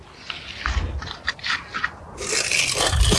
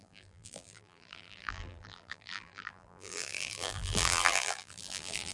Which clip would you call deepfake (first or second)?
second